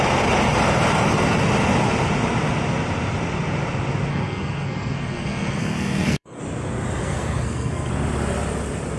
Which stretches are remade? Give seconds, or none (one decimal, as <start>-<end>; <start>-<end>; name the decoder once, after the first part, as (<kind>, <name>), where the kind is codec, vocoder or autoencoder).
4.1-6.4 (codec, SNAC); 7.0-7.9